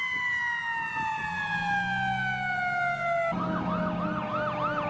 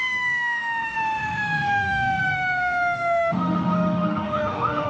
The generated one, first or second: second